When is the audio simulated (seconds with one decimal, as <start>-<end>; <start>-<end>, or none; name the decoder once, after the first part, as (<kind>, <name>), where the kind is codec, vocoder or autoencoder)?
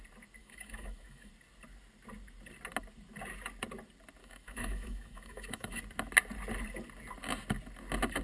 0.4-1.3 (autoencoder, DAC-VAE); 4.2-5.8